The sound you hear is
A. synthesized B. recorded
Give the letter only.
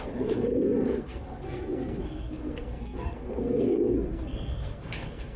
A